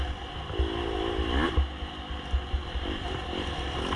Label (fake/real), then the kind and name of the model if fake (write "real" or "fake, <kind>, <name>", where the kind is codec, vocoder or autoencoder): real